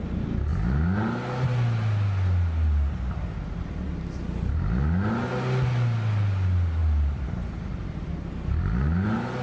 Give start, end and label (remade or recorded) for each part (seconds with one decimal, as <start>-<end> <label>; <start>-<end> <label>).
0.0-6.8 recorded; 6.8-8.3 remade; 8.3-9.4 recorded